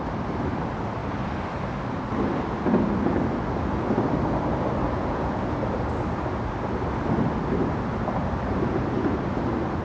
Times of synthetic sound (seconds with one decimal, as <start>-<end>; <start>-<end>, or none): 4.8-5.4